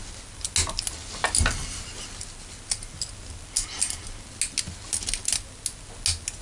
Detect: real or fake real